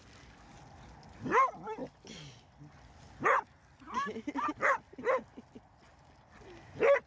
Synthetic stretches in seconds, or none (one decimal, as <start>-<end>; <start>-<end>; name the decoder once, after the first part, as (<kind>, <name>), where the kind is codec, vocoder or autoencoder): none